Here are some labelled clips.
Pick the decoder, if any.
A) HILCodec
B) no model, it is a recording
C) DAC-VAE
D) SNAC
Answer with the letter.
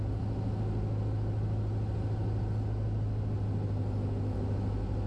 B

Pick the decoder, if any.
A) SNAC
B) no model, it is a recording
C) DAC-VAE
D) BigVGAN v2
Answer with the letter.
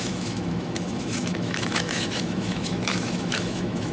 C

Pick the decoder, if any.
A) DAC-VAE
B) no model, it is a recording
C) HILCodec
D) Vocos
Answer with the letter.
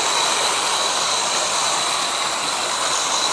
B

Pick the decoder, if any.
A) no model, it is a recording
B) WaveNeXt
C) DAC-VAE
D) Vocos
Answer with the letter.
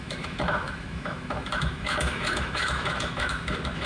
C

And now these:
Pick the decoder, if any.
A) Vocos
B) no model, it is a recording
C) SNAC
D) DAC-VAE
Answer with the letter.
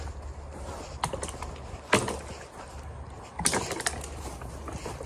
B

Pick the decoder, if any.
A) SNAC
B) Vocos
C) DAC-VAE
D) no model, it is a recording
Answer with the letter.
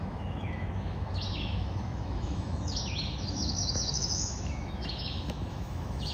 C